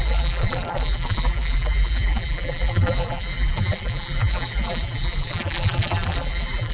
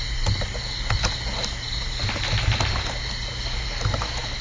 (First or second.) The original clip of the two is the second